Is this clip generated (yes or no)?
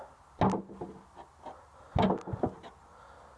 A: no